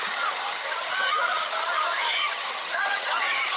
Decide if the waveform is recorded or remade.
remade